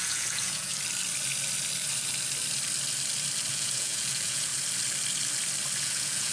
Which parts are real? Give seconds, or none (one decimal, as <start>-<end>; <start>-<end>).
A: 0.7-3.5; 4.5-5.8